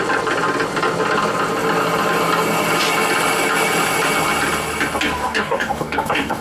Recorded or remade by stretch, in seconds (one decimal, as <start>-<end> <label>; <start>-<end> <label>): 0.0-5.2 recorded; 5.2-6.4 remade